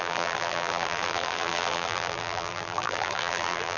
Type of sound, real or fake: fake